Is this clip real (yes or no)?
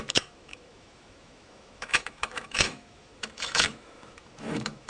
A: no